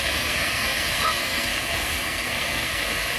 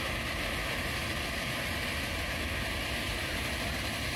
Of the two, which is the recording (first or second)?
second